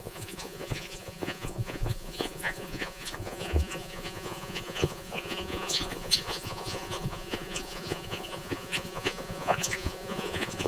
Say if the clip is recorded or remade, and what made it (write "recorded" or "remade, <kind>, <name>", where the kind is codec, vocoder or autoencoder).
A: remade, vocoder, Vocos